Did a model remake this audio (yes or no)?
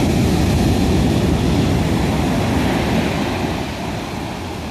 no